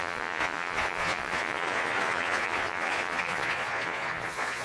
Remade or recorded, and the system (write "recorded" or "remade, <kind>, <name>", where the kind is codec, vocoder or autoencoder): remade, vocoder, Vocos